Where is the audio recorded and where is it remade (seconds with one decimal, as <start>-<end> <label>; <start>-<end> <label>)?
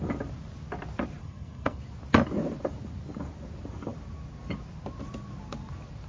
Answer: 0.0-1.2 recorded; 1.2-1.8 remade; 1.8-6.1 recorded